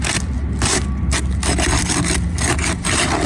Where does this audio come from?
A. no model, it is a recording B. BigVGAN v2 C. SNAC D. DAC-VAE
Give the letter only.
A